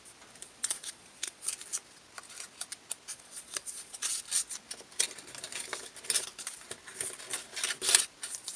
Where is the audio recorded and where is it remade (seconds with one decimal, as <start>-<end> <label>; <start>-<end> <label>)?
0.0-0.4 recorded; 0.4-1.5 remade; 1.5-3.1 recorded; 3.1-4.1 remade; 4.1-8.6 recorded